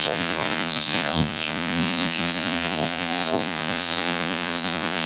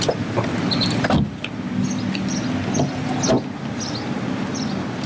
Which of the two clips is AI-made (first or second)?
first